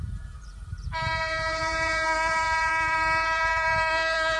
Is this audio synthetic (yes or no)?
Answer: yes